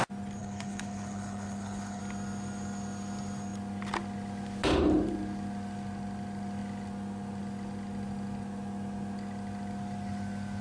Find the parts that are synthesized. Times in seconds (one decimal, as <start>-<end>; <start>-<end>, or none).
0.4-2.0